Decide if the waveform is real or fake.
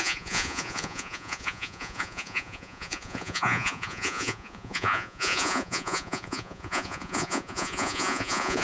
fake